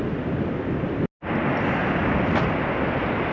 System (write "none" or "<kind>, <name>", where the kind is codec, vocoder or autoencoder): none